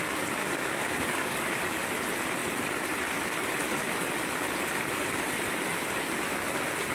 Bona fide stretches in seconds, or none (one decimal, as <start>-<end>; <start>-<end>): 0.0-0.4; 1.8-6.9